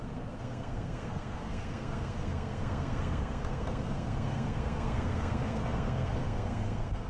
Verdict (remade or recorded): remade